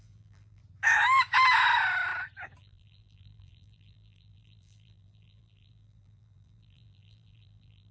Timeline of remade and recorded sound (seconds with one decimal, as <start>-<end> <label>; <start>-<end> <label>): 0.0-0.6 remade; 0.6-2.6 recorded; 2.6-7.9 remade